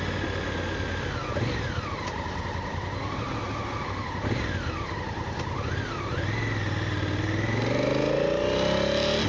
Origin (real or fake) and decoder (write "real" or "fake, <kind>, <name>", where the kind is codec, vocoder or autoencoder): real